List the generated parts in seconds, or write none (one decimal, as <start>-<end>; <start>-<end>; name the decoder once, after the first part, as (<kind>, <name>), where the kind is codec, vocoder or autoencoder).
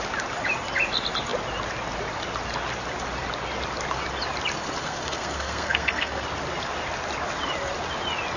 4.8-6.2 (codec, SNAC)